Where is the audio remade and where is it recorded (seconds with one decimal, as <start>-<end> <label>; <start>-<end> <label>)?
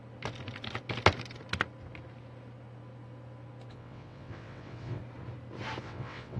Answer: 0.0-3.7 recorded; 3.7-5.0 remade; 5.0-5.8 recorded; 5.8-6.4 remade